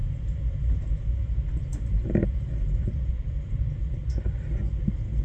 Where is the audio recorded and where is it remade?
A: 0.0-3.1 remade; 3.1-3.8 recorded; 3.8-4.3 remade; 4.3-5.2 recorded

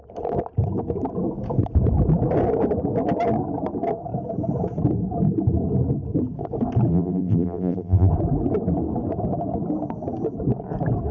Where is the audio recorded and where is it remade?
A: 0.0-6.9 recorded; 6.9-8.1 remade; 8.1-11.1 recorded

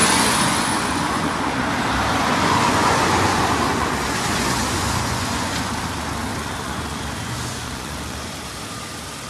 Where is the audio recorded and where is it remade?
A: 0.0-1.7 remade; 1.7-2.1 recorded; 2.1-5.7 remade; 5.7-6.3 recorded; 6.3-8.4 remade; 8.4-9.3 recorded

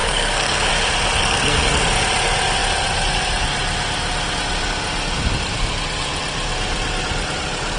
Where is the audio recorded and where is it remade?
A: 0.0-0.7 remade; 0.7-1.2 recorded; 1.2-1.8 remade; 1.8-7.8 recorded

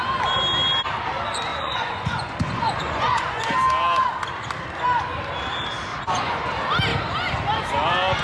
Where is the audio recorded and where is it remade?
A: 0.0-1.5 recorded; 1.5-3.4 remade; 3.4-5.9 recorded; 5.9-6.5 remade; 6.5-8.2 recorded

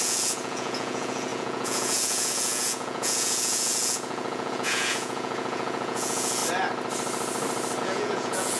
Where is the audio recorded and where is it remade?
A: 0.0-6.4 remade; 6.4-7.8 recorded; 7.8-8.6 remade